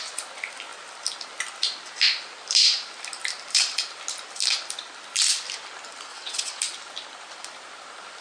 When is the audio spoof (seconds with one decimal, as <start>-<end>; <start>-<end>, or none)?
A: 6.1-6.6